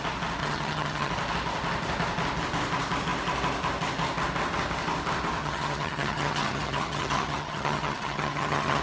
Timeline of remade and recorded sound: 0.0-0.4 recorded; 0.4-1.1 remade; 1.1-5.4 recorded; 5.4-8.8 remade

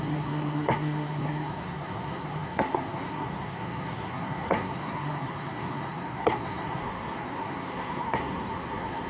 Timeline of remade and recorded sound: 0.0-9.1 remade

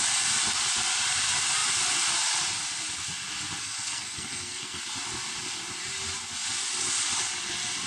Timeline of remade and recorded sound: 0.0-3.6 recorded; 3.6-4.8 remade; 4.8-7.9 recorded

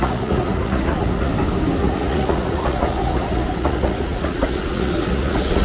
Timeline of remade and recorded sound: 0.0-1.3 remade; 1.3-1.8 recorded; 1.8-5.6 remade